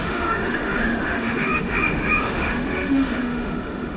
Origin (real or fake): fake